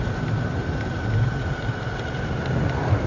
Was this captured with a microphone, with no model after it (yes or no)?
yes